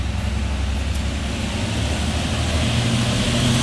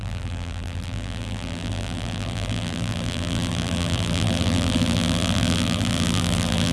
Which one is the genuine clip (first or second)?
first